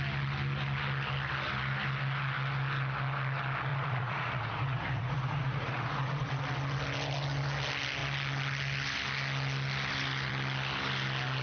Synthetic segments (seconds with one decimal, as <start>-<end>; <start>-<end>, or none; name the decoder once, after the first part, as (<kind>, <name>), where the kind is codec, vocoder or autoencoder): 3.7-6.4 (vocoder, Vocos)